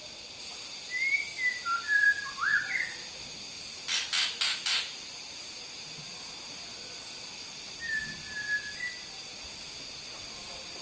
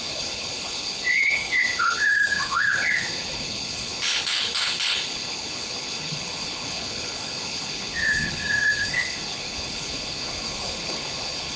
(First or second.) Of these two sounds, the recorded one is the first